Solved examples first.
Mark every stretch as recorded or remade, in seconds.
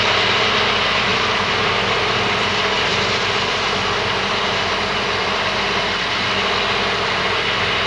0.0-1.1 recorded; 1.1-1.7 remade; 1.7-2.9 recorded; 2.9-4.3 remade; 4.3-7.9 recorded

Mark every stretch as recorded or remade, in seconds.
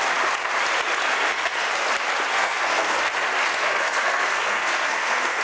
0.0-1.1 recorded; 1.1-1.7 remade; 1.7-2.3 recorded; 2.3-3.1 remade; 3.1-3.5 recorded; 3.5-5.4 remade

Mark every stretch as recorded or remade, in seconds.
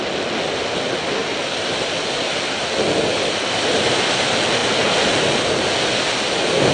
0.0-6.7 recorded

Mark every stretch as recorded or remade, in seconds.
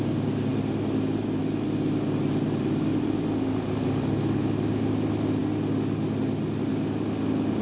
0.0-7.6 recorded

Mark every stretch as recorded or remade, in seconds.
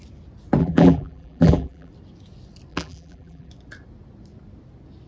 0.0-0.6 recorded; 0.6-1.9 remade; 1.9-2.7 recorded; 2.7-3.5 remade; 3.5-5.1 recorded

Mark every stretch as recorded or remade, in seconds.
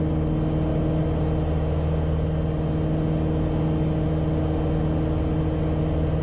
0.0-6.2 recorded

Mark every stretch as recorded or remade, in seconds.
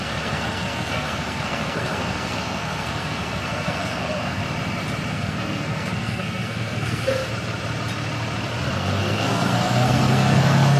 0.0-4.4 remade; 4.4-5.1 recorded; 5.1-7.2 remade; 7.2-8.7 recorded; 8.7-10.8 remade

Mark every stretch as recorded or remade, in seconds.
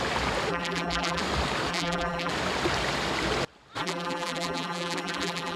0.0-0.5 recorded; 0.5-1.2 remade; 1.2-1.7 recorded; 1.7-2.3 remade; 2.3-3.8 recorded; 3.8-5.6 remade